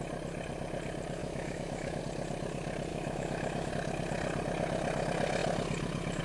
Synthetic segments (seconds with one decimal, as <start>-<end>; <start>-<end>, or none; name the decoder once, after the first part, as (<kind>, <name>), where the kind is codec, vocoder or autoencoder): 1.2-2.0 (autoencoder, DAC-VAE); 2.9-3.7